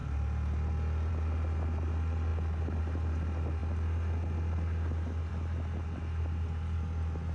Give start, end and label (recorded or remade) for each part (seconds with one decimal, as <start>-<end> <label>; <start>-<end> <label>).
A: 0.0-7.3 recorded